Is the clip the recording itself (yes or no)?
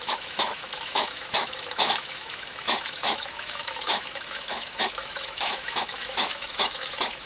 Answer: no